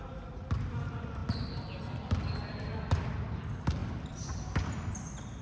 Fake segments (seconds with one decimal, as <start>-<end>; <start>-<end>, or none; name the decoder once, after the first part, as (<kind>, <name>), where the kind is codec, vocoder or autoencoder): none